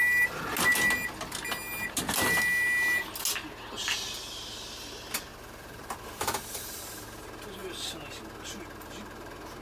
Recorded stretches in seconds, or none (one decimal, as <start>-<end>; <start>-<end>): 0.0-5.3; 6.8-9.6